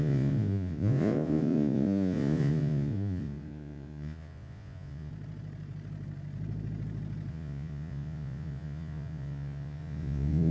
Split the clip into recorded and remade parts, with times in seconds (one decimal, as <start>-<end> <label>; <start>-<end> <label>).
0.0-5.1 remade; 5.1-7.3 recorded; 7.3-10.5 remade